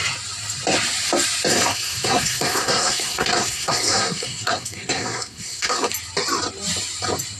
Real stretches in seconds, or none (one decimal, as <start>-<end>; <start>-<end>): 0.0-1.5; 5.9-7.4

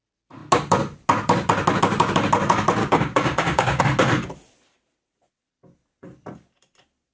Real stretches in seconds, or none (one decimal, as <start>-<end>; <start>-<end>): 0.0-2.8; 3.8-7.1